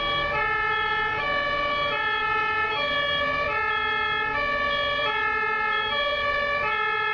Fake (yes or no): no